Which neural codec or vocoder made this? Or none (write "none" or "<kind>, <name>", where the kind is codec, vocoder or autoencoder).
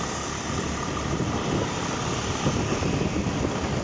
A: none